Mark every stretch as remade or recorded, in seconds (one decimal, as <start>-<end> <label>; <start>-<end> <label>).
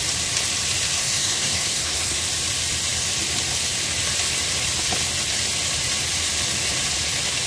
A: 0.0-1.0 recorded; 1.0-2.2 remade; 2.2-7.5 recorded